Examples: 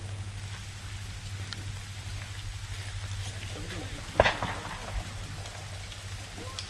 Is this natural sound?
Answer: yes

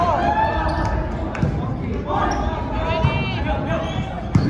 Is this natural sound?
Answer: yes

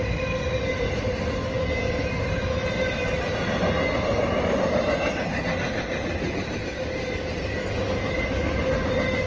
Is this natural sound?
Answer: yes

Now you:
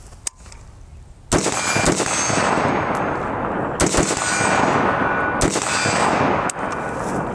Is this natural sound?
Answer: yes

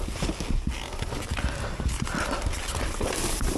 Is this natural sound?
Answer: yes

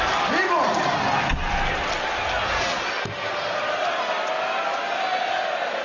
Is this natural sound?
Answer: yes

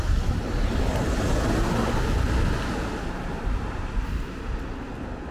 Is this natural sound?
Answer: yes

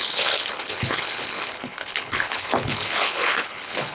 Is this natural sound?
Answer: no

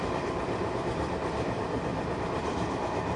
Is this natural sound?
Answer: no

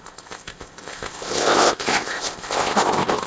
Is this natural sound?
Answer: no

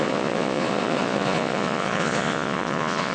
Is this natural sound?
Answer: no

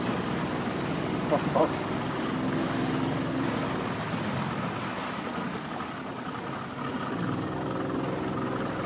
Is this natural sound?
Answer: yes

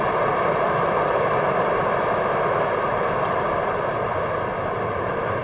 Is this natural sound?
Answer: yes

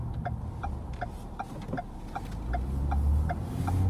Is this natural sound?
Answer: yes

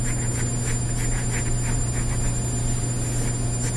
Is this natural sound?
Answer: yes